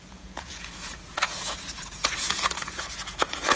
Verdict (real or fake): fake